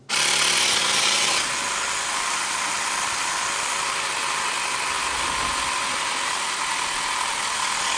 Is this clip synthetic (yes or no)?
no